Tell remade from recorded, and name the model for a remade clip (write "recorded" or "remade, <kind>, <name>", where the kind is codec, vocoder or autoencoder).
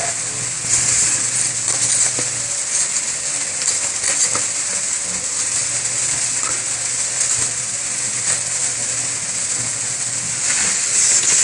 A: recorded